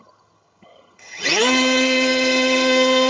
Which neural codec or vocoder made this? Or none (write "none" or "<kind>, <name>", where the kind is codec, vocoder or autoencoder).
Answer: vocoder, HiFi-GAN